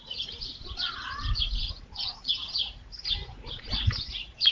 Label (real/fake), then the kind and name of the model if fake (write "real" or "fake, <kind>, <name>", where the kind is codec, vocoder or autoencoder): fake, vocoder, Vocos